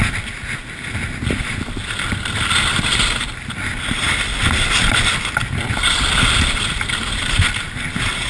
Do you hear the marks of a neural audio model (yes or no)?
no